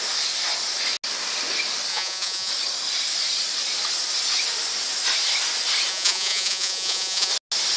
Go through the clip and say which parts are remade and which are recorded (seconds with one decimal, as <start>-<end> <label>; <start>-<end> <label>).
0.0-1.9 recorded; 1.9-2.5 remade; 2.5-5.9 recorded; 5.9-7.3 remade; 7.3-7.8 recorded